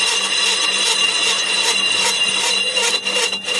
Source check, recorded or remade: recorded